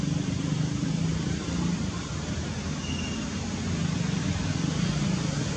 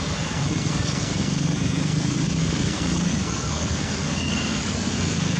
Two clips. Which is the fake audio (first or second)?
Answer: second